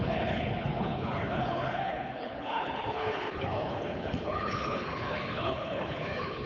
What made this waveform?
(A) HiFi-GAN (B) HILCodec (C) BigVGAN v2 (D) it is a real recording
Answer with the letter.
B